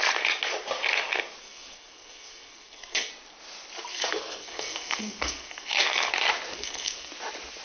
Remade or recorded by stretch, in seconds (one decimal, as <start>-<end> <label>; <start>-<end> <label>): 0.0-1.4 recorded; 1.4-3.1 remade; 3.1-3.9 recorded; 3.9-6.1 remade; 6.1-6.5 recorded; 6.5-7.1 remade; 7.1-7.6 recorded